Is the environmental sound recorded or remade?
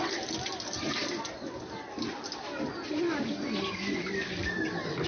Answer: recorded